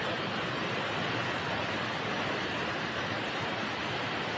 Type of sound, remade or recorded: recorded